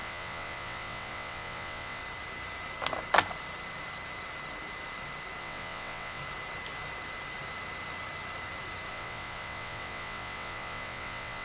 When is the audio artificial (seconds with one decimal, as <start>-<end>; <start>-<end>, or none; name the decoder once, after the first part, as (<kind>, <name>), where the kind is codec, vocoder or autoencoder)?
0.0-2.0 (vocoder, WaveNeXt); 5.4-6.2; 8.9-11.4